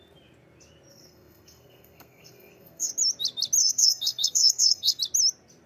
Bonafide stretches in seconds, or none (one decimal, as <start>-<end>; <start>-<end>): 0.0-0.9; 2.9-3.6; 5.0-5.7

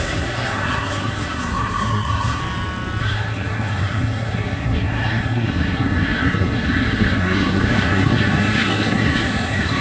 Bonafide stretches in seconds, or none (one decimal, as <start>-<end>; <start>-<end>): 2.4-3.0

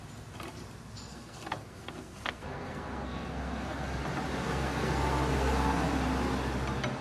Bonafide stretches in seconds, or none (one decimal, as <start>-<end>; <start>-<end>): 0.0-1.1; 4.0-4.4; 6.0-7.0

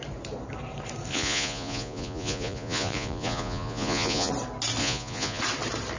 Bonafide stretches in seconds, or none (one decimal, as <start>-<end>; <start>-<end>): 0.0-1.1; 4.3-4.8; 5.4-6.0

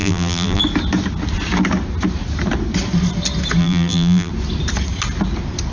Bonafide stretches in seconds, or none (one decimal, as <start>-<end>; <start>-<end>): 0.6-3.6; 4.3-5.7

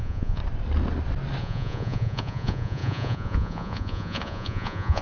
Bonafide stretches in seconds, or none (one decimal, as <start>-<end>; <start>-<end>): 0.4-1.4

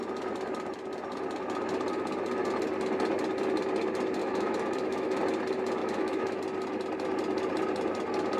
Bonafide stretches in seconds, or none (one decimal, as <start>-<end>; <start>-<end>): 0.0-4.2; 5.2-5.8; 6.4-8.4